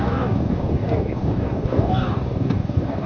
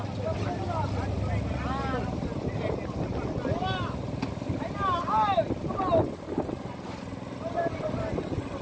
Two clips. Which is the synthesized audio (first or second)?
first